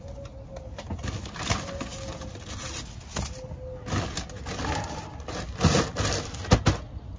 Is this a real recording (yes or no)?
yes